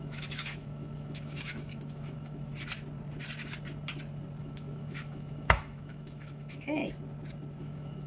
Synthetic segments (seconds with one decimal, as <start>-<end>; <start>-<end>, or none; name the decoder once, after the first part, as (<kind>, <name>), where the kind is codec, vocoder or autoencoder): 0.0-2.5 (autoencoder, DAC-VAE); 4.4-6.8; 7.6-8.1